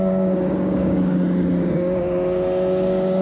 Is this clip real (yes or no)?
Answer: no